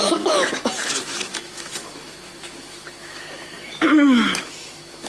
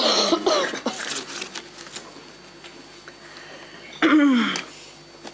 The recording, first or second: second